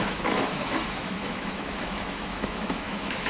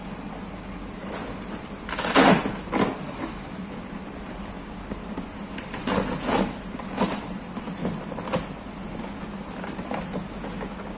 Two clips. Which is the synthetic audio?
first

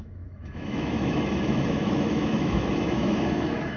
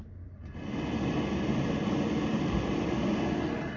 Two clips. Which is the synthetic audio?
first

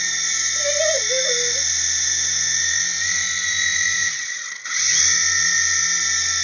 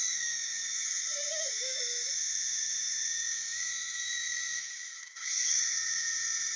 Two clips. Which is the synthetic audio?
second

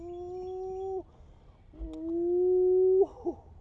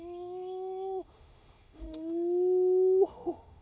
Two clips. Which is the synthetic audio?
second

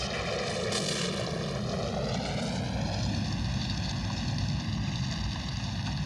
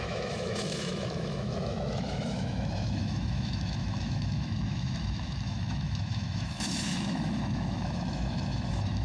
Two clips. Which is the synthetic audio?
second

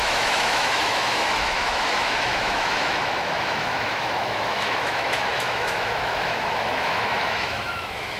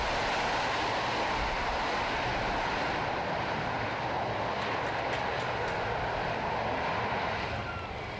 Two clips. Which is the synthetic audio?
first